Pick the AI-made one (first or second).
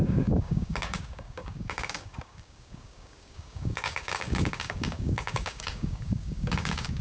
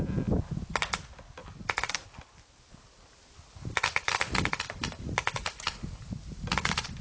first